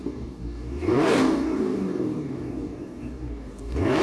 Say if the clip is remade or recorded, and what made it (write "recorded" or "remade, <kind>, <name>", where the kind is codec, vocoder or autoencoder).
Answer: remade, codec, DAC